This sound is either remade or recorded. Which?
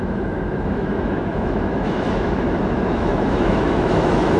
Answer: remade